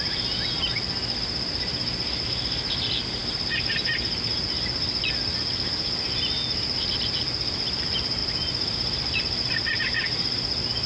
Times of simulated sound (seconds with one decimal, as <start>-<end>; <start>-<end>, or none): none